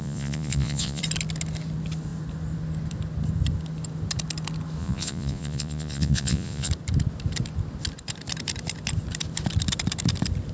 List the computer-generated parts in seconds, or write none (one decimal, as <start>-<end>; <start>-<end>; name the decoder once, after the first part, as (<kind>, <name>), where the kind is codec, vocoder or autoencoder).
0.0-1.0 (vocoder, Vocos); 4.8-6.7

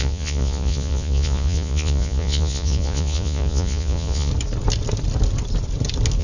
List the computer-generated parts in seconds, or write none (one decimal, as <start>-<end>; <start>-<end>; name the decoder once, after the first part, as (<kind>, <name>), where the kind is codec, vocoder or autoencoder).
0.0-4.3 (vocoder, Vocos)

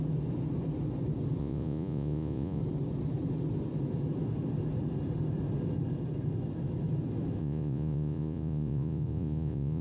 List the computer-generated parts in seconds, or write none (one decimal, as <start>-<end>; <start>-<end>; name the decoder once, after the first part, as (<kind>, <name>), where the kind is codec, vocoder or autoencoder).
1.4-2.6 (vocoder, Vocos); 7.4-9.8

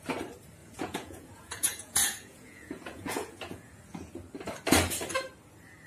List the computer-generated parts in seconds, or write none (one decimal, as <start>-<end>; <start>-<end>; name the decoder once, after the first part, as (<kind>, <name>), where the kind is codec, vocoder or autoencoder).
0.6-4.1 (vocoder, Vocos)

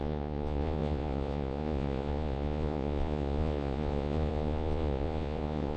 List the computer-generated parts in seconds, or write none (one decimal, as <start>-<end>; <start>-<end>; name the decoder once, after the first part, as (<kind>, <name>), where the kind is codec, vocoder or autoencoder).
0.0-5.8 (vocoder, Vocos)

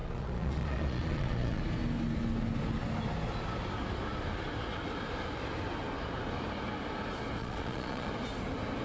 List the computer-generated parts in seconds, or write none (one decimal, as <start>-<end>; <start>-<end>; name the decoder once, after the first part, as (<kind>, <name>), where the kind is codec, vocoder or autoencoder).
0.0-1.6 (vocoder, Vocos); 7.4-8.1

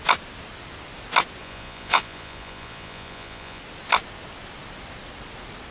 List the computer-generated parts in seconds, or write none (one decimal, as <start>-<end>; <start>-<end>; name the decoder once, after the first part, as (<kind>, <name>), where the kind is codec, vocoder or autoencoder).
1.4-3.6 (vocoder, Vocos)

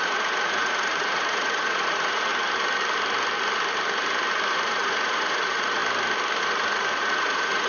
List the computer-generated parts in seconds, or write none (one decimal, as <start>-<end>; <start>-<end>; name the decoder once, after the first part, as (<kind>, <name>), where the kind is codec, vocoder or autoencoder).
0.0-2.3 (vocoder, Vocos); 4.5-5.8; 6.4-7.7